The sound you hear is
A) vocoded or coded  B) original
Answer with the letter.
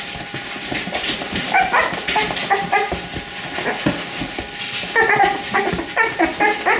B